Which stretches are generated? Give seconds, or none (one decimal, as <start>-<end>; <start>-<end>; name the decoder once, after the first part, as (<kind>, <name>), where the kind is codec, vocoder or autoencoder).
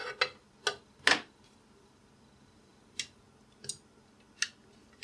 none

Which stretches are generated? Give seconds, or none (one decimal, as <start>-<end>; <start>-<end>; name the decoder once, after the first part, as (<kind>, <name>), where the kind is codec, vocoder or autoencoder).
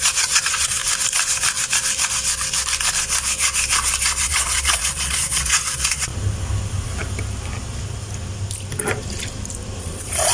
0.0-0.8 (vocoder, Vocos); 4.2-6.1; 9.8-10.3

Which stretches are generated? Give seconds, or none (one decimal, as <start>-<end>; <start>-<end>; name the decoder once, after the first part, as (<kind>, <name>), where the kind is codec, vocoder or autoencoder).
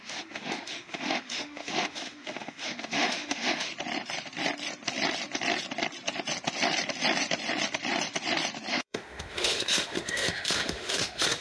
0.0-3.7 (autoencoder, DAC-VAE); 8.7-11.4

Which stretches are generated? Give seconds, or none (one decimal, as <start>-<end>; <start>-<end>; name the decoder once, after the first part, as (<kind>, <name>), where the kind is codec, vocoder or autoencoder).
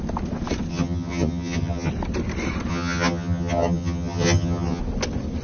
0.7-1.9 (vocoder, HiFi-GAN); 2.7-4.8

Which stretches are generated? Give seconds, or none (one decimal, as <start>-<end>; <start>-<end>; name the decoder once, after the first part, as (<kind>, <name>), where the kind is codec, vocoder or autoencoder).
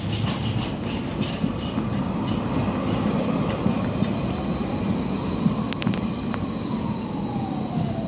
none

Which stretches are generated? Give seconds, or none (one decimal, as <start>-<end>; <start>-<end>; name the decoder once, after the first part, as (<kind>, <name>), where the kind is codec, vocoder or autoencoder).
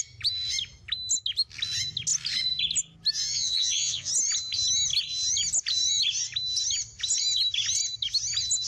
3.2-4.1 (vocoder, Vocos)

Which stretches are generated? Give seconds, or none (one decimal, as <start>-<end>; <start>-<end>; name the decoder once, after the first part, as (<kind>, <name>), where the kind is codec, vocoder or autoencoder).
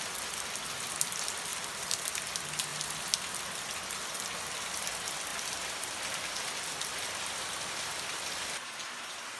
1.5-2.1 (vocoder, BigVGAN v2); 5.3-6.9